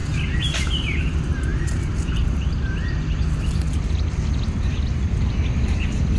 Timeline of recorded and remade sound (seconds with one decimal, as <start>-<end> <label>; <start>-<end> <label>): 0.0-6.2 recorded